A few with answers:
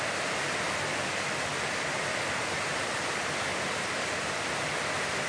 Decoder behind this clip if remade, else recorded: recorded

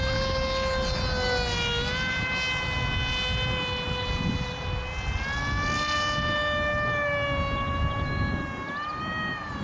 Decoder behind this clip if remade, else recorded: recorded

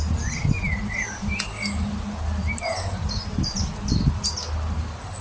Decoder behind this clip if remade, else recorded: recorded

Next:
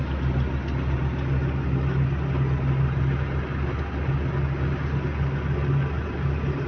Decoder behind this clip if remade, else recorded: recorded